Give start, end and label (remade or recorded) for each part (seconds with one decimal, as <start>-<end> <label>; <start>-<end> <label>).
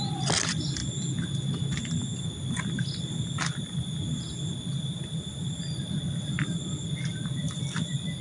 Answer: 0.0-8.2 recorded